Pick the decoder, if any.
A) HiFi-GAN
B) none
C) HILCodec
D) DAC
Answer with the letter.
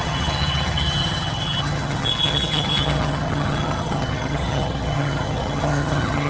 A